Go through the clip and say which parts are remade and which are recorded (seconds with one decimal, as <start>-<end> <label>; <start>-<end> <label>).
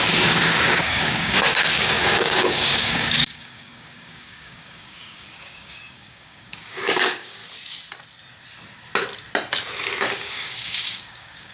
0.0-7.4 remade; 7.4-10.0 recorded; 10.0-11.5 remade